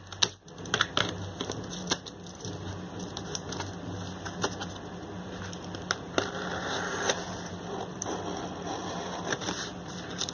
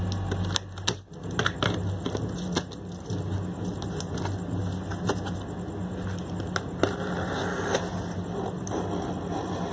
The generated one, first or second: first